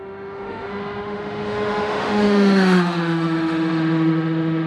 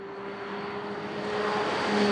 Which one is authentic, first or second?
second